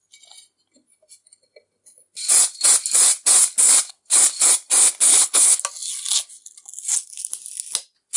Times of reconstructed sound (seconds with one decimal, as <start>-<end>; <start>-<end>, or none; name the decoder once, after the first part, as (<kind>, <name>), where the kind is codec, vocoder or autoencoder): 5.1-5.6 (codec, HILCodec)